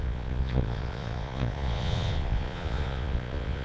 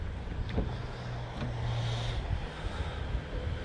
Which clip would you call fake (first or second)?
first